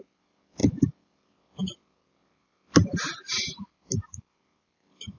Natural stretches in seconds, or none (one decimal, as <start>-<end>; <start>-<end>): 0.0-5.2